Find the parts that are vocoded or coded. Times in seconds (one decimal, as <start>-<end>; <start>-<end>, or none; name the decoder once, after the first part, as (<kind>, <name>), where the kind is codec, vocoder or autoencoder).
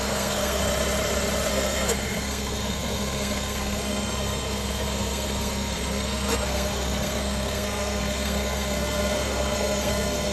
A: 0.0-0.6 (codec, SNAC); 1.5-10.3